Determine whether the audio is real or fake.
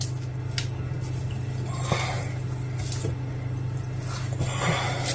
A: real